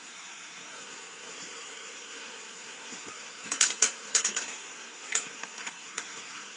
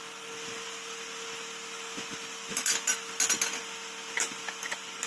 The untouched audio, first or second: second